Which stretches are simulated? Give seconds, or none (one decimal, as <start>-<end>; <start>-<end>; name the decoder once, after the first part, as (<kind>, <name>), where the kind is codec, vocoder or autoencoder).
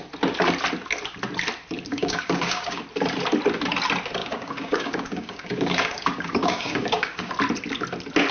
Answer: 1.9-2.8 (codec, DAC); 4.2-7.3